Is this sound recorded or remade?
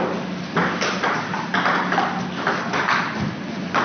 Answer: recorded